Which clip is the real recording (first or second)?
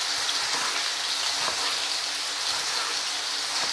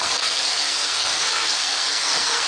first